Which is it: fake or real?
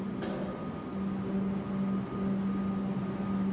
real